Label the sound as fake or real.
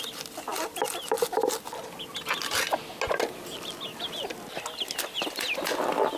real